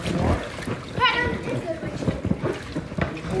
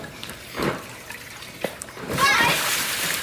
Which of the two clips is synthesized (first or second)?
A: second